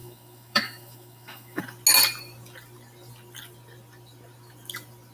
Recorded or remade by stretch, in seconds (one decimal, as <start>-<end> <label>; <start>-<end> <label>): 0.0-1.6 remade; 1.6-5.1 recorded